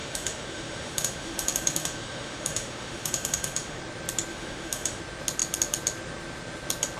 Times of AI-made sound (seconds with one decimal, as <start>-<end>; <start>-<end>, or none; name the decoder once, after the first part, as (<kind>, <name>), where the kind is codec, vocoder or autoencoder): 0.0-3.8 (autoencoder, DAC-VAE); 4.3-5.0